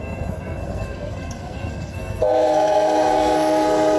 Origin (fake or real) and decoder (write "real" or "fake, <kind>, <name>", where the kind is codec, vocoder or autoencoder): fake, codec, SNAC